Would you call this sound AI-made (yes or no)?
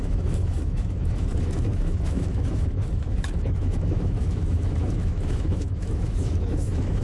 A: yes